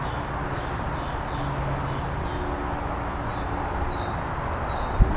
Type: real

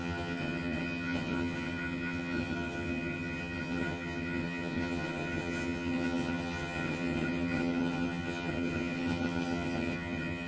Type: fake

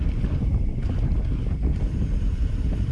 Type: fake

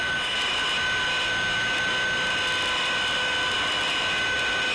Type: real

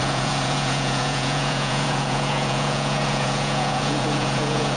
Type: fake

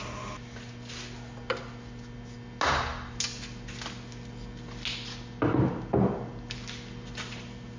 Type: real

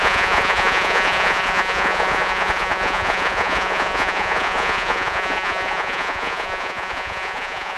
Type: fake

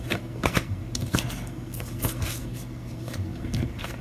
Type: fake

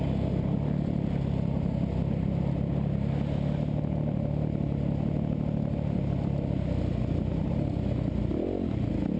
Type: real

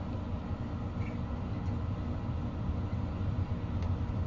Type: real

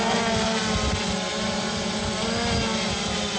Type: real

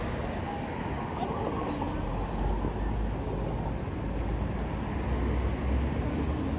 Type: real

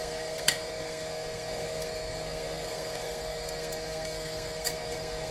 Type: fake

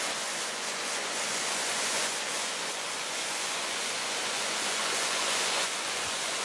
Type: fake